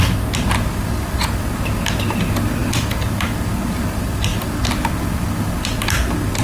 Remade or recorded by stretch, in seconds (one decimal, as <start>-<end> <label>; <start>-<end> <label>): 0.0-2.6 recorded; 2.6-3.3 remade; 3.3-4.3 recorded; 4.3-5.3 remade; 5.3-6.4 recorded